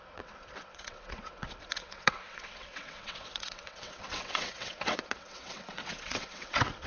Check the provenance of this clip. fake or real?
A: fake